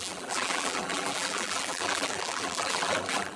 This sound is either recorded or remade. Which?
remade